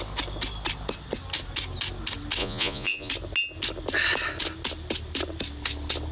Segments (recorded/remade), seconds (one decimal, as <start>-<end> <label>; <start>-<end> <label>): 0.0-2.4 recorded; 2.4-3.1 remade; 3.1-6.1 recorded